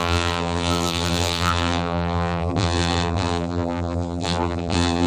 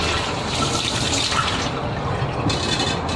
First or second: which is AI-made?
first